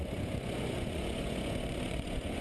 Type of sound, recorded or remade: remade